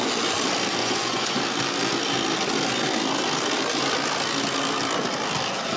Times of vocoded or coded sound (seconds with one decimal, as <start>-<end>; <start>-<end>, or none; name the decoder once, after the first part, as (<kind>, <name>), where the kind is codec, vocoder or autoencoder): 0.8-1.4 (vocoder, Vocos)